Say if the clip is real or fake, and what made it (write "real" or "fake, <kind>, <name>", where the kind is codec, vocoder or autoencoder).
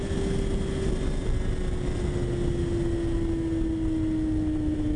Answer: real